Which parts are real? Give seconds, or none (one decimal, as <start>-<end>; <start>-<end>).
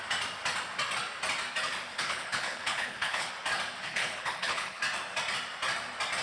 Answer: 0.0-1.9; 3.3-3.8; 4.8-6.2